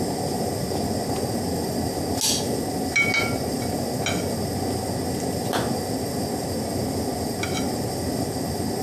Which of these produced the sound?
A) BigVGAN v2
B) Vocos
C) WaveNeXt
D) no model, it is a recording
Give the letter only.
D